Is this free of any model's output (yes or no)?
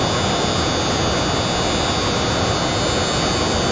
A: yes